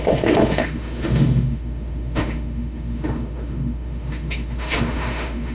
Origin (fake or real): fake